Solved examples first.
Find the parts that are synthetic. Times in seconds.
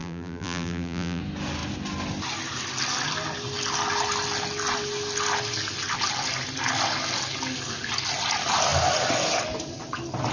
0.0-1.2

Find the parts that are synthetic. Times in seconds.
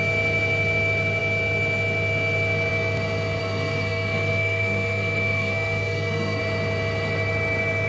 3.4-6.4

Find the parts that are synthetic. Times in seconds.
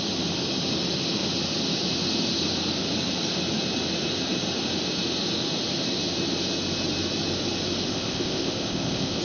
7.9-9.2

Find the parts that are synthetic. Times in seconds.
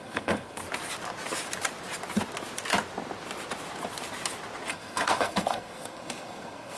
0.0-0.6; 4.7-6.8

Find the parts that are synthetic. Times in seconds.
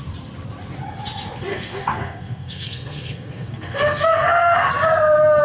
1.5-4.7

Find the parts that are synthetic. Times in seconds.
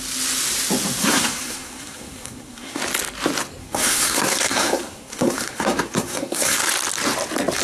1.0-2.8; 3.6-6.7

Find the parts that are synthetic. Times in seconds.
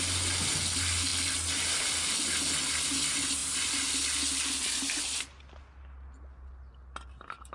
none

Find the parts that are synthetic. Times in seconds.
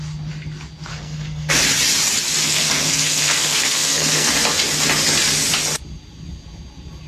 0.9-1.5; 2.4-4.3